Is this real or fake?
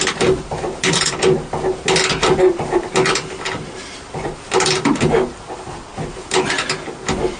real